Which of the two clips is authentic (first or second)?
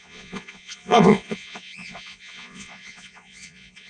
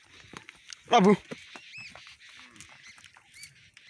second